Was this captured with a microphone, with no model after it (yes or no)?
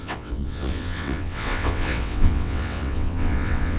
no